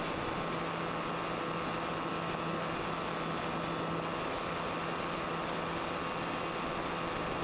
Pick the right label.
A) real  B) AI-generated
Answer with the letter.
A